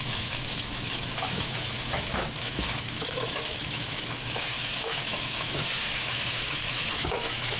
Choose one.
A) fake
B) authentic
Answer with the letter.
A